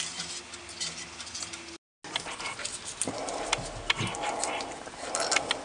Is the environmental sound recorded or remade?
recorded